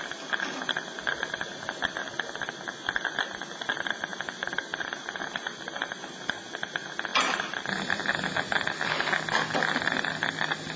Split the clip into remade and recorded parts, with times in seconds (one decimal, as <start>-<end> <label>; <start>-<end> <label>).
0.0-10.8 recorded